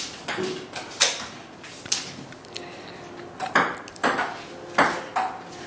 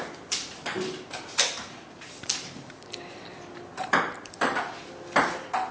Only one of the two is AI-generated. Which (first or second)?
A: second